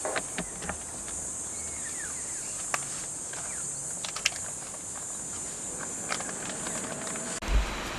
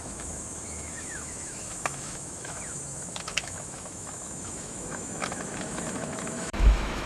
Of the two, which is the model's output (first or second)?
second